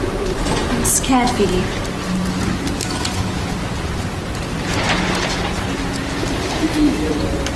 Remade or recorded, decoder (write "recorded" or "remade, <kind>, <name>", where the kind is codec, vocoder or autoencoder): recorded